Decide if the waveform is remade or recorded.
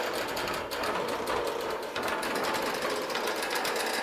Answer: recorded